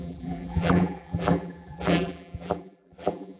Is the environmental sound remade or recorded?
remade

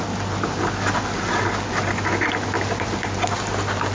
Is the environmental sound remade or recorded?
recorded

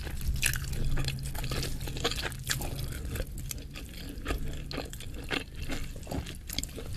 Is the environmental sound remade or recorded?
recorded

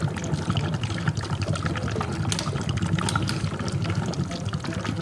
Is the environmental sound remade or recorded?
recorded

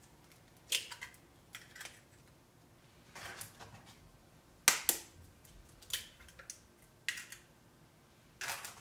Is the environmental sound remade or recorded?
recorded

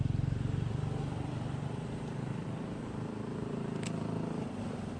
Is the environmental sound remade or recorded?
remade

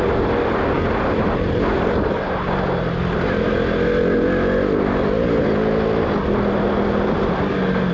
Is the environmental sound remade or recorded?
recorded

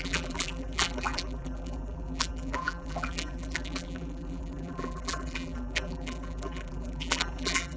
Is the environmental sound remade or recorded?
remade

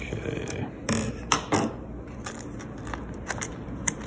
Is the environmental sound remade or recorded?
remade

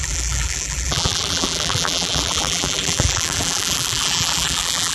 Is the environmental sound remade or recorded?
remade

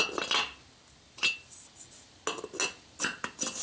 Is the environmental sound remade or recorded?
recorded